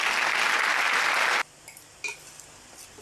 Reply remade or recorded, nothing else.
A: recorded